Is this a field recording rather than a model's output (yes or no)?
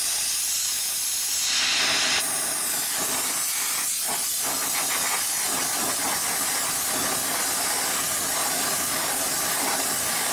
yes